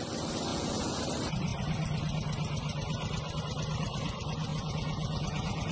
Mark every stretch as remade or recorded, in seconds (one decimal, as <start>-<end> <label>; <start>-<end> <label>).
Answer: 0.0-0.5 recorded; 0.5-1.0 remade; 1.0-4.5 recorded; 4.5-5.7 remade